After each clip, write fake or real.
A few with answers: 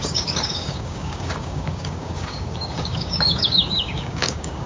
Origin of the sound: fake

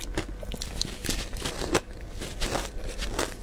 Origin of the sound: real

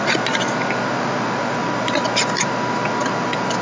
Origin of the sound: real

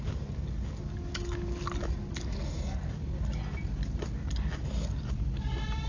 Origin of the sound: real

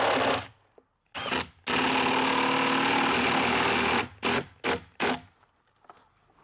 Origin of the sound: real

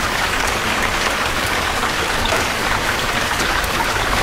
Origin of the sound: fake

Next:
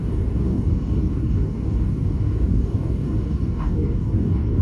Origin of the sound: fake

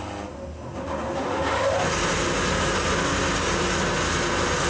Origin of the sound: real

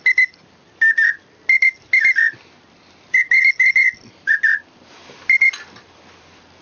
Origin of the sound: real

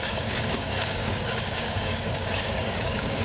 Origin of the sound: fake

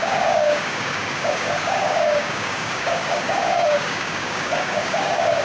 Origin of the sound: fake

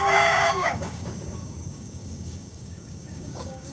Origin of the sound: fake